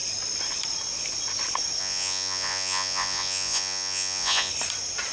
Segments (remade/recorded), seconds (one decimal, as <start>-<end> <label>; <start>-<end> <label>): 0.0-1.8 recorded; 1.8-4.5 remade; 4.5-5.1 recorded